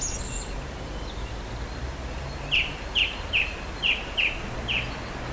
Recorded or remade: recorded